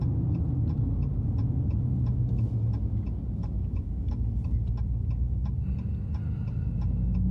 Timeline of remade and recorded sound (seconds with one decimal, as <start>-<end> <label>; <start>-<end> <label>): 0.0-3.4 recorded; 3.4-4.7 remade; 4.7-7.3 recorded